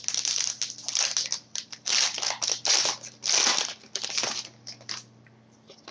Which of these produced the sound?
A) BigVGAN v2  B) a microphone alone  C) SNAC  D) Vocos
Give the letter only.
B